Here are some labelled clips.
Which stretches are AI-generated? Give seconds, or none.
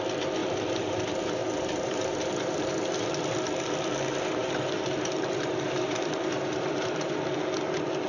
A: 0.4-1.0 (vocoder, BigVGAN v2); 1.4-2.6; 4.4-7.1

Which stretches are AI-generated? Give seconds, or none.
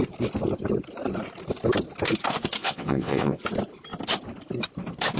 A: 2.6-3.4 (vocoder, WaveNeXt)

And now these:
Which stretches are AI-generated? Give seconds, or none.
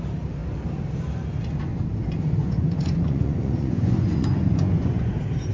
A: 2.4-5.1 (vocoder, Vocos)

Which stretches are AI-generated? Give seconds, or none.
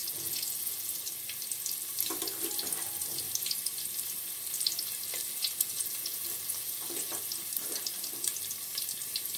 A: 0.0-0.9 (vocoder, Vocos); 5.4-7.1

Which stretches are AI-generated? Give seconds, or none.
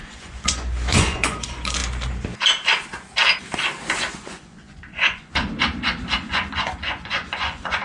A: 0.0-1.8 (vocoder, Vocos); 4.1-5.4; 6.3-7.8